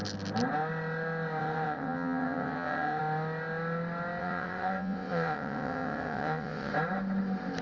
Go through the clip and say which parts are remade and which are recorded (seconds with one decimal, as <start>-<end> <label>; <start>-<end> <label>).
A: 0.0-1.4 recorded; 1.4-3.0 remade; 3.0-4.2 recorded; 4.2-6.7 remade; 6.7-7.6 recorded

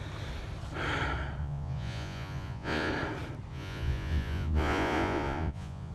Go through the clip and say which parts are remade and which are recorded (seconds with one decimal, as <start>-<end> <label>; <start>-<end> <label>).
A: 0.0-1.4 recorded; 1.4-2.9 remade; 2.9-3.5 recorded; 3.5-5.9 remade

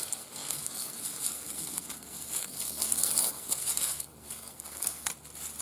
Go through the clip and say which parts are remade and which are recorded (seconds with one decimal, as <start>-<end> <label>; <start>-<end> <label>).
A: 0.0-5.1 remade; 5.1-5.6 recorded

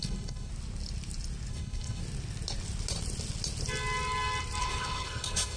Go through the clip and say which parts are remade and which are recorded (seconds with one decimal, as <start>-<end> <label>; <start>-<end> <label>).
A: 0.0-0.5 remade; 0.5-1.5 recorded; 1.5-2.0 remade; 2.0-4.6 recorded; 4.6-5.6 remade

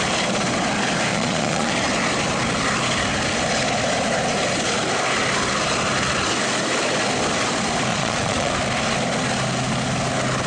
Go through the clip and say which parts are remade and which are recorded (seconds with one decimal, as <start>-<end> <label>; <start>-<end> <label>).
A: 0.0-1.1 recorded; 1.1-1.7 remade; 1.7-7.9 recorded; 7.9-8.5 remade; 8.5-10.5 recorded

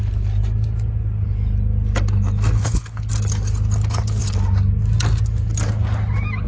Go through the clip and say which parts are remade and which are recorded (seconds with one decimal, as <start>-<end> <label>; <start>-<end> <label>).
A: 0.0-2.6 recorded; 2.6-3.1 remade; 3.1-6.5 recorded

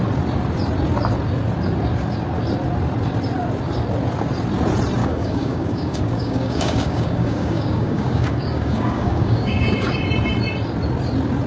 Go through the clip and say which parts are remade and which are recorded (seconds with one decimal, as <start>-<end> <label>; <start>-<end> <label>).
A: 0.0-5.0 recorded; 5.0-10.1 remade; 10.1-11.5 recorded

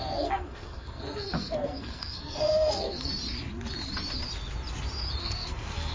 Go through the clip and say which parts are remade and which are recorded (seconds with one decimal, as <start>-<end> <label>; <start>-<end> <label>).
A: 0.0-3.1 remade; 3.1-5.2 recorded; 5.2-5.9 remade